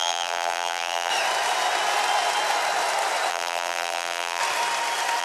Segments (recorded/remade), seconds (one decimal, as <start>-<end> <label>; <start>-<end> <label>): 0.0-1.1 remade; 1.1-3.3 recorded; 3.3-4.4 remade; 4.4-5.2 recorded